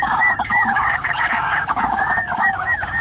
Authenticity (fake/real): fake